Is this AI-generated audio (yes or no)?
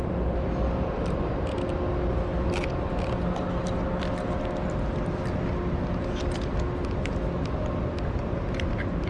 no